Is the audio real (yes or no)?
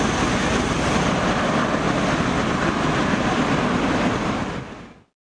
yes